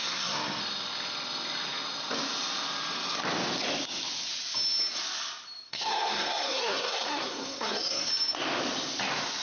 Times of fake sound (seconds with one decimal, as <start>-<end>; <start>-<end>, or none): 0.0-0.6; 5.7-8.1